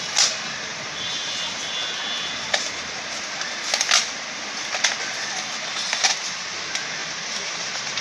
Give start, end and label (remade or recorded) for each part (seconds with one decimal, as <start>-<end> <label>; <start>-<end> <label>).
0.0-7.0 recorded; 7.0-8.0 remade